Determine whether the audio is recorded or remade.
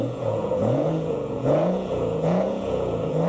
remade